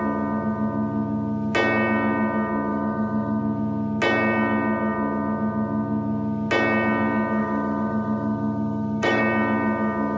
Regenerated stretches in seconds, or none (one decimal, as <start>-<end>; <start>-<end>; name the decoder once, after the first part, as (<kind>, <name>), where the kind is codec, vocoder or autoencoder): 2.7-3.4 (autoencoder, DAC-VAE); 7.4-9.2